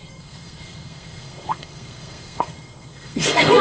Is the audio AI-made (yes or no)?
yes